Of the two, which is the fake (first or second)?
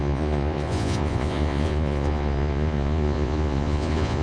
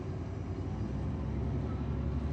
first